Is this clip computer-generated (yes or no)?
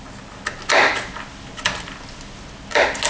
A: no